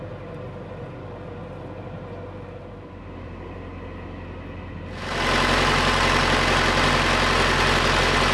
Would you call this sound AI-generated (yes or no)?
no